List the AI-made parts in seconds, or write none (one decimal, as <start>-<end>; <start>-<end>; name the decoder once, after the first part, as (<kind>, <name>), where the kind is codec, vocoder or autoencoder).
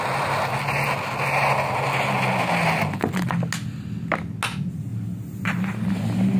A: none